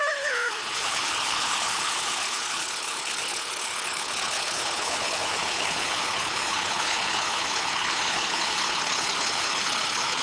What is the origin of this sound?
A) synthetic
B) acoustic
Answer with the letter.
A